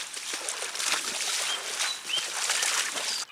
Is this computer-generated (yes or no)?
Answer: no